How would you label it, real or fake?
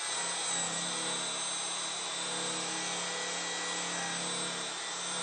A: real